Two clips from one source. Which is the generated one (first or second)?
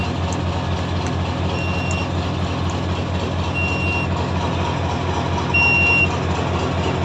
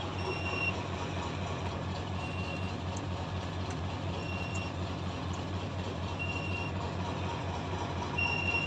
second